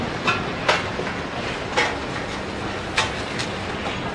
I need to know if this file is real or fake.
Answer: real